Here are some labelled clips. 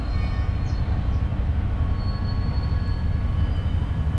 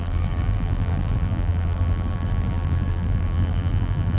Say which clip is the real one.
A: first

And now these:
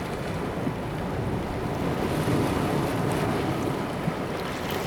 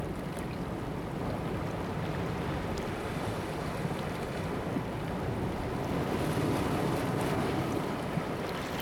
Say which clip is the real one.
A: first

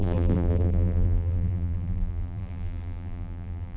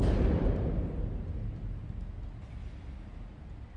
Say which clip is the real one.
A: second